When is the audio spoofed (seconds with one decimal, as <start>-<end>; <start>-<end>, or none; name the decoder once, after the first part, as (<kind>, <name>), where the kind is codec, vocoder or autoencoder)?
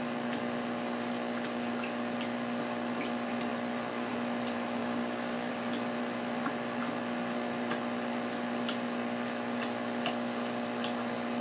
4.8-5.5 (codec, DAC)